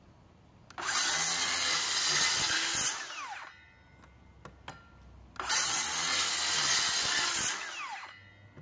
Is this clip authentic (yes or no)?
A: yes